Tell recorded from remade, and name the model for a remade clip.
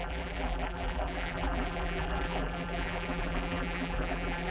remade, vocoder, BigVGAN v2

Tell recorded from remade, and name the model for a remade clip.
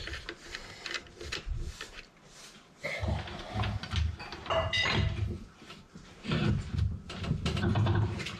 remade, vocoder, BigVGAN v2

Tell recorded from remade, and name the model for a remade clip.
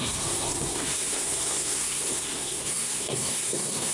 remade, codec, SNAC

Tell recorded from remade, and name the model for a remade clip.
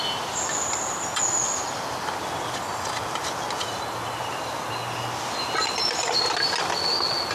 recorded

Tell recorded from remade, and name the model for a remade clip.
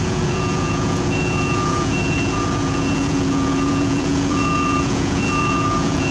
remade, vocoder, Vocos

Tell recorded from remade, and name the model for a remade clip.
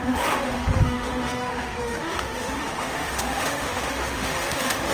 remade, autoencoder, DAC-VAE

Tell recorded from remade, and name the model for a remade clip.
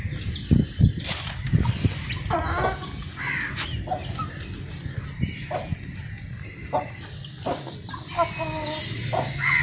recorded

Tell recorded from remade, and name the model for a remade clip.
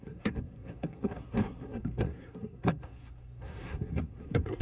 remade, codec, SNAC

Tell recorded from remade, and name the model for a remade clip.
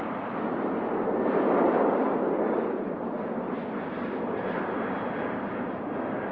recorded